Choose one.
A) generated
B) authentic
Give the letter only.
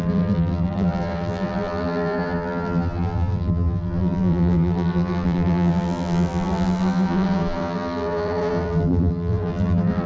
A